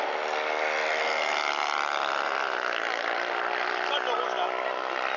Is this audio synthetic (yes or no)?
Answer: no